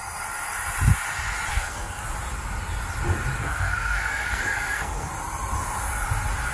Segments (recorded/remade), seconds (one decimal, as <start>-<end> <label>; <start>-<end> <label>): 0.0-1.5 recorded; 1.5-2.0 remade; 2.0-3.4 recorded; 3.4-5.1 remade; 5.1-6.5 recorded